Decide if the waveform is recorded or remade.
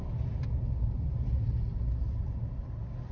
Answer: recorded